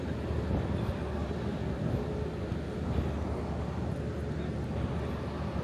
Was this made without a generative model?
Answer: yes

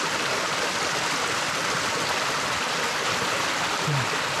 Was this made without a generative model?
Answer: yes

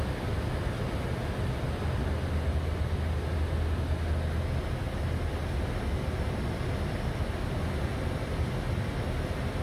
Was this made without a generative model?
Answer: yes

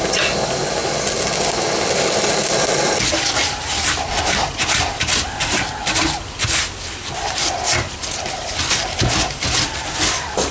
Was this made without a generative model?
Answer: yes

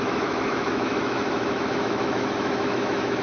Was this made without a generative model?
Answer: no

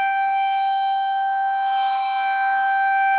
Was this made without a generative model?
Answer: no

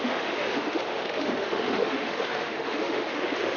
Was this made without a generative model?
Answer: no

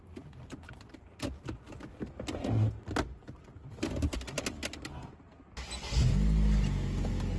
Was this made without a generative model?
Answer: yes